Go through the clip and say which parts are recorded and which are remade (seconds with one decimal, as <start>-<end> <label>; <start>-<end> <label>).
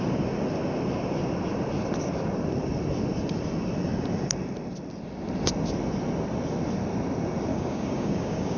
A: 0.0-7.5 recorded; 7.5-8.6 remade